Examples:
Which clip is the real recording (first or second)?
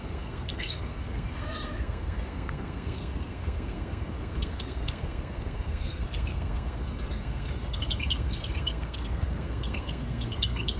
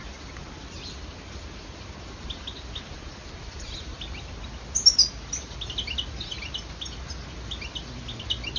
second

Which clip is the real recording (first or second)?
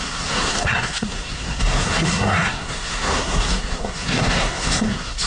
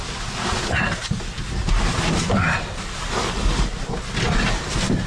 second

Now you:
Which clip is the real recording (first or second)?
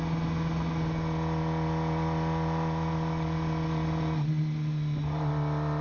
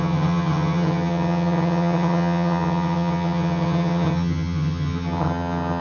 first